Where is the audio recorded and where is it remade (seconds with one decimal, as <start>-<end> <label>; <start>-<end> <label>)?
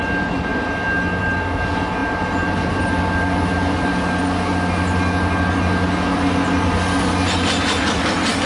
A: 0.0-8.5 recorded